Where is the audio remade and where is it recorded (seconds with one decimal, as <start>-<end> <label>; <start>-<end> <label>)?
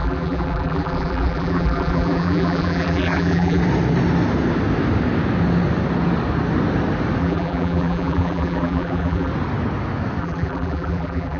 0.0-3.6 remade; 3.6-7.2 recorded; 7.2-9.3 remade; 9.3-10.2 recorded; 10.2-11.4 remade